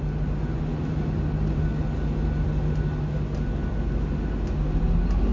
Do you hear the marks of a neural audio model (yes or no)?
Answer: no